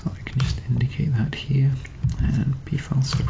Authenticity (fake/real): real